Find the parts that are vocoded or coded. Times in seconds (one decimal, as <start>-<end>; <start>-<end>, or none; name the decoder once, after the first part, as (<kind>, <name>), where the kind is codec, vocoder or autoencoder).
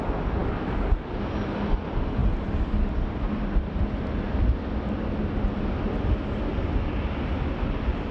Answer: 0.4-1.0 (codec, DAC)